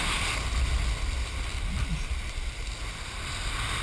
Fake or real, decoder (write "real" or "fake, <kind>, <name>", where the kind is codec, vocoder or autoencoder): real